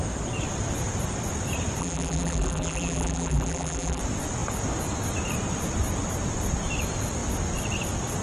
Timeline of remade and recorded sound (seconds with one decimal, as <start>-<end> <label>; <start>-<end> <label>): 0.0-1.8 recorded; 1.8-4.0 remade; 4.0-8.2 recorded